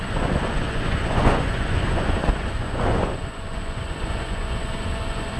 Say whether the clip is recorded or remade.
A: remade